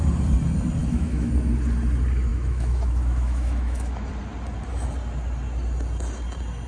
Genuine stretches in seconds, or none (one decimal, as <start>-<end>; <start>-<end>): 0.0-0.8; 1.3-2.3; 4.1-6.7